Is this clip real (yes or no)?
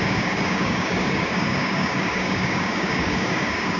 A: no